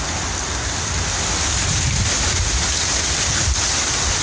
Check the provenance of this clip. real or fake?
real